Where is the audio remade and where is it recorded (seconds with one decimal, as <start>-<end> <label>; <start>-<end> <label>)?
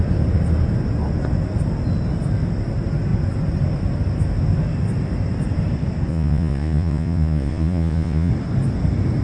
0.0-6.1 recorded; 6.1-8.3 remade; 8.3-9.2 recorded